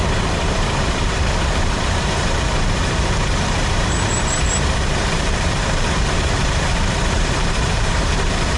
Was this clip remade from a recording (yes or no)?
yes